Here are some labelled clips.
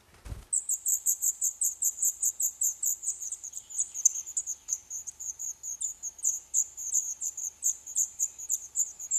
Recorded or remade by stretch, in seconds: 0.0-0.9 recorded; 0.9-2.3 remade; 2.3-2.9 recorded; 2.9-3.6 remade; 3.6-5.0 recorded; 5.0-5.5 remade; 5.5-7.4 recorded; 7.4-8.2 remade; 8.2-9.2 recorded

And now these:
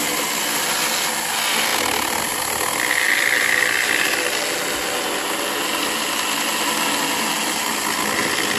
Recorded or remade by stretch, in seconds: 0.0-8.6 recorded

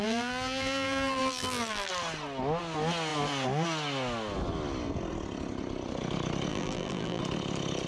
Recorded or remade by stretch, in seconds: 0.0-1.9 remade; 1.9-6.5 recorded; 6.5-7.2 remade; 7.2-7.9 recorded

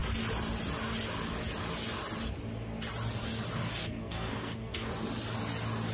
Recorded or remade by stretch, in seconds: 0.0-3.8 recorded; 3.8-4.9 remade; 4.9-5.9 recorded

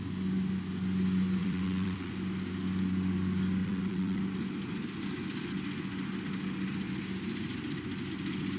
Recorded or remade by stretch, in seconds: 0.0-1.4 recorded; 1.4-2.1 remade; 2.1-3.6 recorded; 3.6-4.2 remade; 4.2-8.6 recorded